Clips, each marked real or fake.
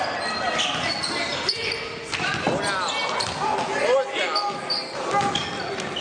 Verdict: real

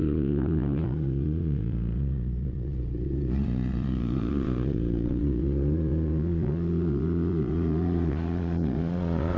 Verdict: fake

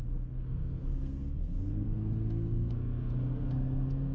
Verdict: fake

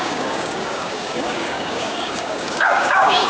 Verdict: fake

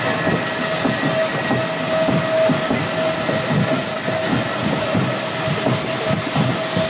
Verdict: real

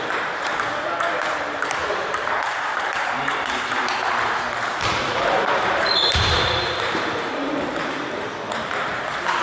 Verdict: fake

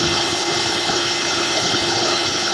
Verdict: fake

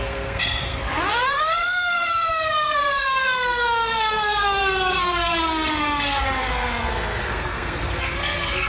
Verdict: fake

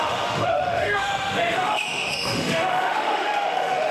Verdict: fake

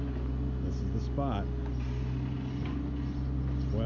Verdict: real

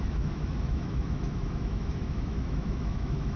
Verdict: fake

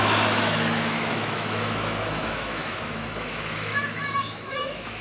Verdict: fake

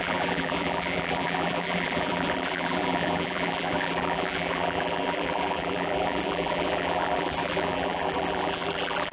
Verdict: fake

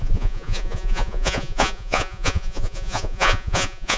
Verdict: fake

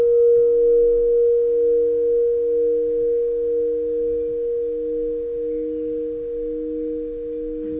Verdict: real